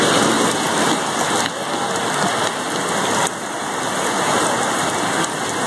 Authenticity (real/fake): real